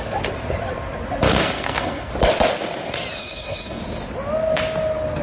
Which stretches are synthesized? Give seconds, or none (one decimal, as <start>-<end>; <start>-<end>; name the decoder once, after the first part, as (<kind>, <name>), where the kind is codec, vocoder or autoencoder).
1.3-2.1 (codec, SNAC); 3.2-3.8